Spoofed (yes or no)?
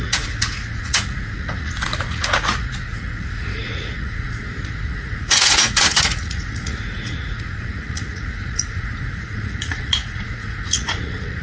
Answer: yes